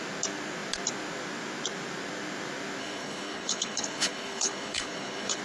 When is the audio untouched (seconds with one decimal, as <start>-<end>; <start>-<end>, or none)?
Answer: 0.0-2.8